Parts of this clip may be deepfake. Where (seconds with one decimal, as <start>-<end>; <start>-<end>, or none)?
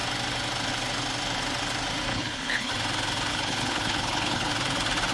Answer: 2.1-2.7; 3.3-4.5